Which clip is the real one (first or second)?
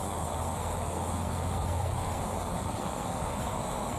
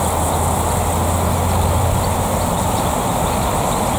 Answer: second